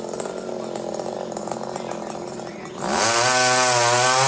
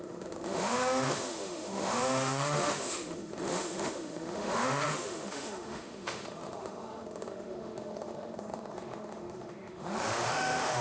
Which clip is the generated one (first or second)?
second